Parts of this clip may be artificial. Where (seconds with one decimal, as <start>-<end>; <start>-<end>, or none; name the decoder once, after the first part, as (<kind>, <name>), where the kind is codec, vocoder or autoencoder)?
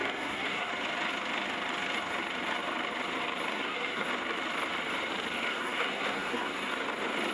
0.0-0.7 (codec, SNAC); 3.5-4.1; 5.5-6.7